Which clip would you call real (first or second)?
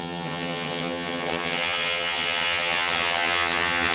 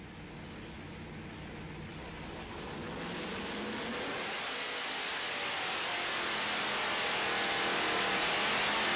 second